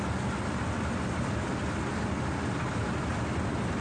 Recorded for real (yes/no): yes